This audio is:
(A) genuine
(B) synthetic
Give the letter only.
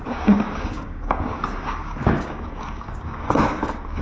B